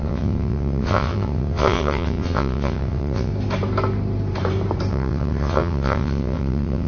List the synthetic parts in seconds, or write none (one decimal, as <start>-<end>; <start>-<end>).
0.0-3.3; 4.9-6.9